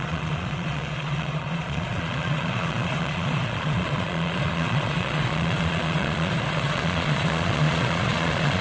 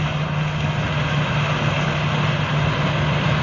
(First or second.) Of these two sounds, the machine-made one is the first